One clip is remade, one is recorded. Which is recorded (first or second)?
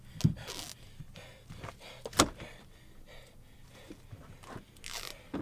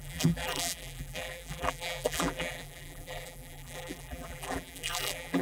first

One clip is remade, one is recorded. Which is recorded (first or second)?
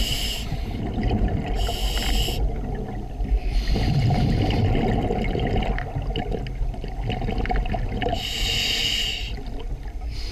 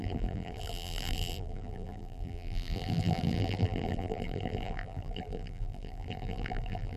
first